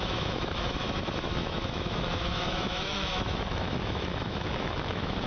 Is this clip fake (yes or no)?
yes